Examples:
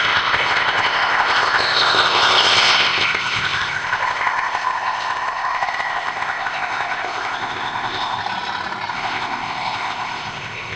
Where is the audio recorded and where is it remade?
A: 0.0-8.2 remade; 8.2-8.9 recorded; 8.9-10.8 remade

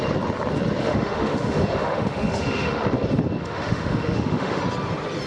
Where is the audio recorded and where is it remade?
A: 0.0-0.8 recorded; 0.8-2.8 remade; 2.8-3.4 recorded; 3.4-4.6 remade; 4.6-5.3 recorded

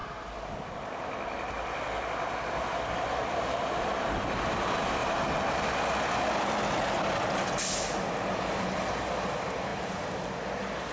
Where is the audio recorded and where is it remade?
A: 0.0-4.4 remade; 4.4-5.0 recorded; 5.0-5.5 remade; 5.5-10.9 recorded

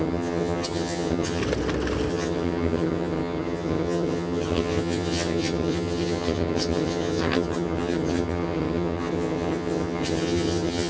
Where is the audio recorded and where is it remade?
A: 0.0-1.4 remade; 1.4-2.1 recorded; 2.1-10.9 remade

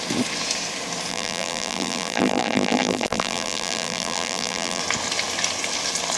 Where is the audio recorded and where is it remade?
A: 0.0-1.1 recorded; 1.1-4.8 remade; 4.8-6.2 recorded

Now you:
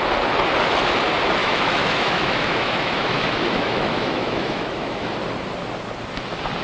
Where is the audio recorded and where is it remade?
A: 0.0-1.4 recorded; 1.4-5.1 remade; 5.1-6.6 recorded

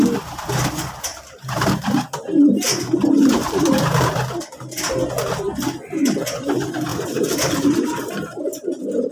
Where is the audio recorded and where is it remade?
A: 0.0-1.1 recorded; 1.1-4.0 remade; 4.0-6.9 recorded; 6.9-8.4 remade; 8.4-9.1 recorded